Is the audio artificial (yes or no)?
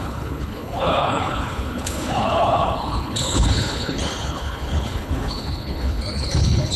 yes